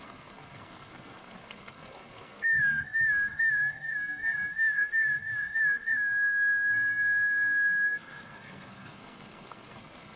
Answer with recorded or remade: remade